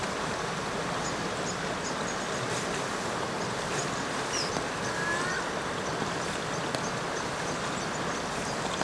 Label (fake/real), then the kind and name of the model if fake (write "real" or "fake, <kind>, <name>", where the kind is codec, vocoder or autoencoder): real